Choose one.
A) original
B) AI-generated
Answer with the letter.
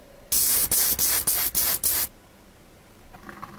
A